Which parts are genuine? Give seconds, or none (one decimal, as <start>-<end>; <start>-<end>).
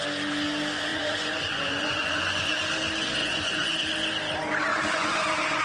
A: 0.0-0.9; 2.6-3.2; 3.7-4.7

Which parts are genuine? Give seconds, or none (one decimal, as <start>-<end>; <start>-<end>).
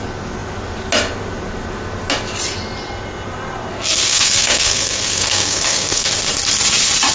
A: 0.0-3.7; 6.1-7.1